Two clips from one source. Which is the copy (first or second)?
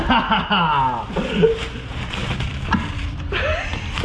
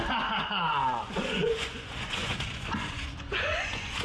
second